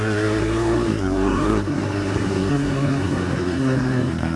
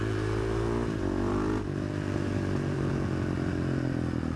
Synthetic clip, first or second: first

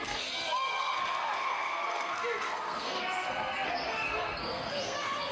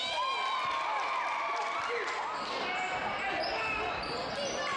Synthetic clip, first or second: first